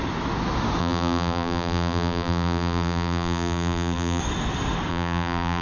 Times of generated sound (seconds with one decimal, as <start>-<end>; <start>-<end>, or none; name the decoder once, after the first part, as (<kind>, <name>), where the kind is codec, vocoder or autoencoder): 0.8-4.2 (vocoder, BigVGAN v2); 4.9-5.6